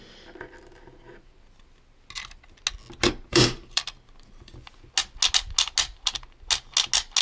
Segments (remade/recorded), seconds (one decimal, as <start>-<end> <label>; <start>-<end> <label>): 0.0-3.3 recorded; 3.3-4.4 remade; 4.4-7.2 recorded